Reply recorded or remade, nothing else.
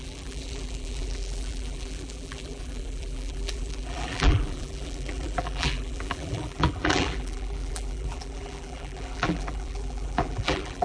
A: remade